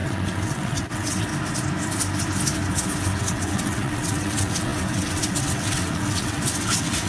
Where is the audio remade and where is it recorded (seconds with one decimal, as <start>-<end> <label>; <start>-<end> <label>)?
0.0-1.3 remade; 1.3-3.2 recorded; 3.2-7.1 remade